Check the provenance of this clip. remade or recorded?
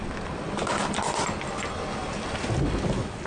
recorded